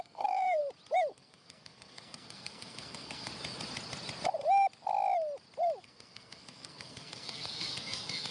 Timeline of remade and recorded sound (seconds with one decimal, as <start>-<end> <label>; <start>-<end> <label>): 0.0-0.6 remade; 0.6-1.1 recorded; 1.1-3.3 remade; 3.3-5.8 recorded; 5.8-8.3 remade